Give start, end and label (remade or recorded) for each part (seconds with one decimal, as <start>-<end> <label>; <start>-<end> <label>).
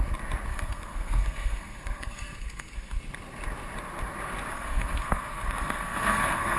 0.0-0.5 recorded; 0.5-3.0 remade; 3.0-4.5 recorded; 4.5-6.6 remade